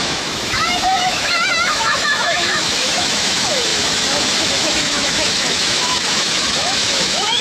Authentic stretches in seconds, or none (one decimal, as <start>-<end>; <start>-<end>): none